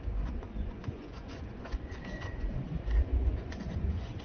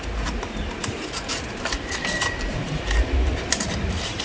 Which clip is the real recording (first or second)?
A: second